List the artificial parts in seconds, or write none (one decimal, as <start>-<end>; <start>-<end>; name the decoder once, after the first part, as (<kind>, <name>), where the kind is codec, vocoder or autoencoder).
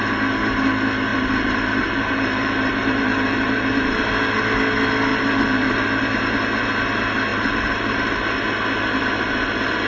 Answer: 1.1-4.1 (vocoder, BigVGAN v2); 5.1-6.2; 7.3-8.2